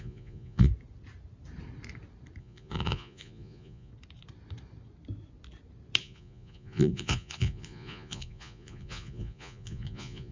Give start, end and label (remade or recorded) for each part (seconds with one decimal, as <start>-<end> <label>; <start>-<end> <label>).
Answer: 0.0-0.7 remade; 0.7-2.4 recorded; 2.4-3.9 remade; 3.9-6.0 recorded; 6.0-10.3 remade